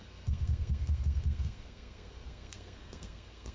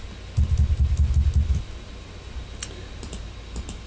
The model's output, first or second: first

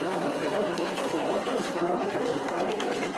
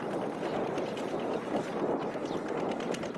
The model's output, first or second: first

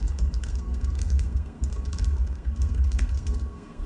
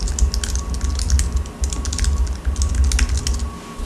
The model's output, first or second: first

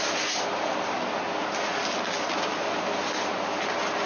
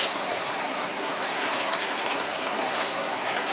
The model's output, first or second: second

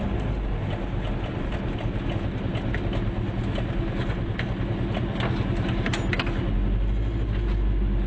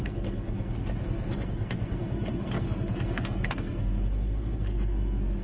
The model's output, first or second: second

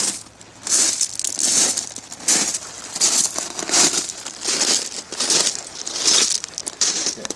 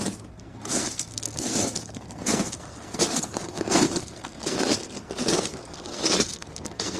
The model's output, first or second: second